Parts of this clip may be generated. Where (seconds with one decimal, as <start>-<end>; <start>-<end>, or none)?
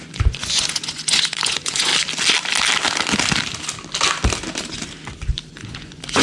0.0-1.9; 5.5-6.2